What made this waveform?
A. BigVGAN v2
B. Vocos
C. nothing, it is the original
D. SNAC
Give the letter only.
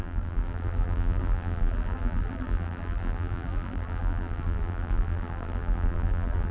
A